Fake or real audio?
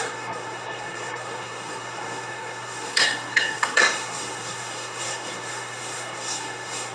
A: fake